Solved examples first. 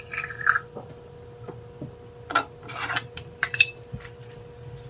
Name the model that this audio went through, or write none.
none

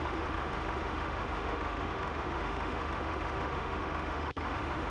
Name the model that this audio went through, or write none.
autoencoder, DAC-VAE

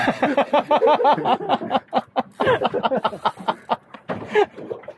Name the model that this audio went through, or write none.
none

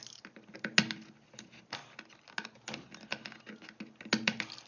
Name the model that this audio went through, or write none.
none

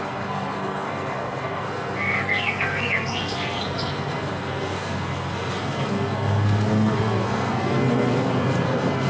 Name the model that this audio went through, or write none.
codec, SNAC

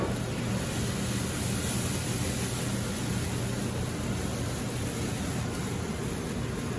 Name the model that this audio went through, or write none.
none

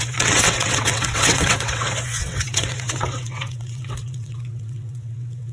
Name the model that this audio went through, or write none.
vocoder, WaveNeXt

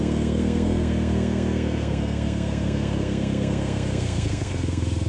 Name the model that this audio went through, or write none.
codec, SNAC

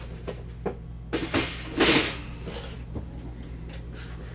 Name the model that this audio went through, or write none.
none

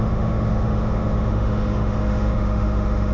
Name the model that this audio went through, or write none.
autoencoder, DAC-VAE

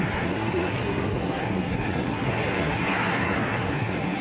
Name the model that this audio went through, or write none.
codec, SNAC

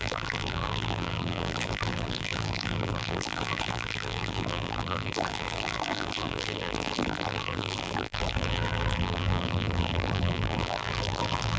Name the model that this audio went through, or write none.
vocoder, BigVGAN v2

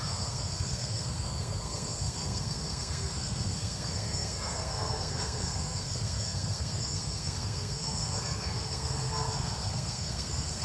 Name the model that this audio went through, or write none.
codec, SNAC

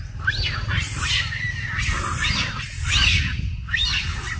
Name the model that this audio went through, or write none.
none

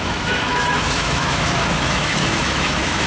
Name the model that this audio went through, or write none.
autoencoder, DAC-VAE